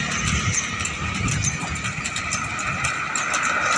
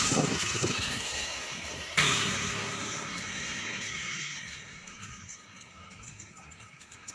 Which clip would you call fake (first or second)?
second